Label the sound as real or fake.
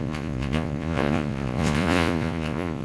fake